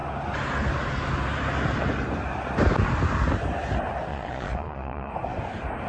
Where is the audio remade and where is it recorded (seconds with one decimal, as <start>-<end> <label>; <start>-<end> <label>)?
0.0-4.1 recorded; 4.1-5.1 remade; 5.1-5.9 recorded